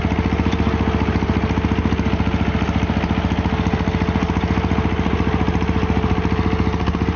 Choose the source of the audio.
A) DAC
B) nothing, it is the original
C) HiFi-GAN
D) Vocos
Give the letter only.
B